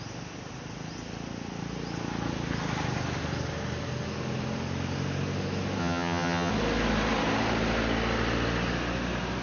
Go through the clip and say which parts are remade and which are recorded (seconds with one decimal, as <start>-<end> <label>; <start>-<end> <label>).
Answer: 0.0-5.8 recorded; 5.8-6.5 remade; 6.5-9.4 recorded